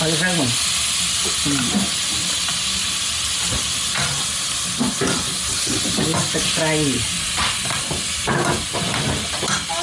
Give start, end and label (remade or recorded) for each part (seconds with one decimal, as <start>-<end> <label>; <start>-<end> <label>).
0.0-9.8 recorded